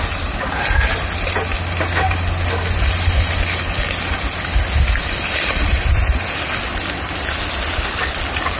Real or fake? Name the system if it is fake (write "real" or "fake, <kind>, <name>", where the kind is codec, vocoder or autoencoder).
real